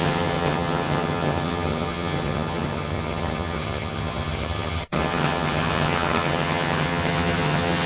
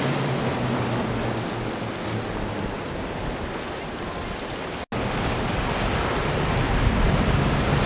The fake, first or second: first